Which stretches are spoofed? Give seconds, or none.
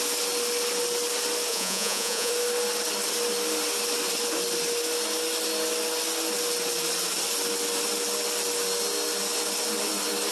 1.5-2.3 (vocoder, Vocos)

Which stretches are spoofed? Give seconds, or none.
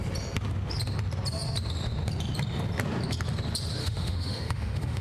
3.8-5.0 (autoencoder, DAC-VAE)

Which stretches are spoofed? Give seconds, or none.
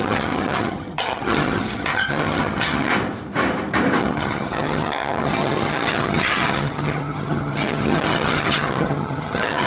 0.0-2.9 (vocoder, HiFi-GAN); 4.0-9.7